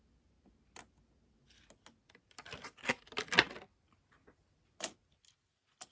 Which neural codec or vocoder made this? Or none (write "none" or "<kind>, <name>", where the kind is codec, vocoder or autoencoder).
none